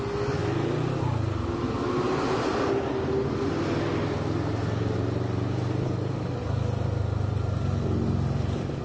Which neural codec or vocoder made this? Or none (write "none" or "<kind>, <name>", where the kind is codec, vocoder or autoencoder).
none